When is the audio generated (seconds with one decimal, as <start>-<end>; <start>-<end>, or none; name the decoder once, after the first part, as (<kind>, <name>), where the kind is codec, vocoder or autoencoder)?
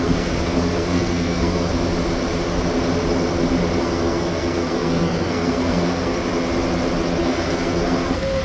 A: 0.0-1.7 (codec, SNAC); 3.8-6.2; 7.2-8.4